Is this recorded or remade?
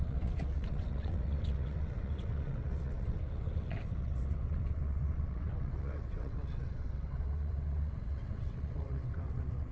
remade